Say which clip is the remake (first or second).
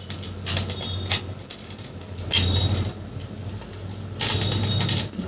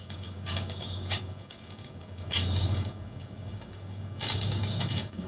second